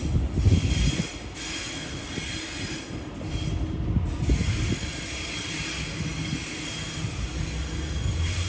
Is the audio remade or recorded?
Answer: recorded